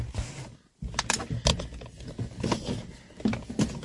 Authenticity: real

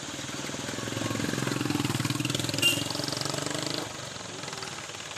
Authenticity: real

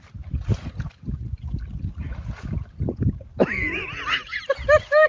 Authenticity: real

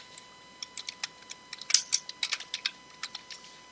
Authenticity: real